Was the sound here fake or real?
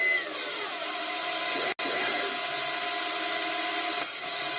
real